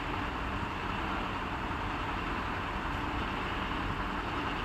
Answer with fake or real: real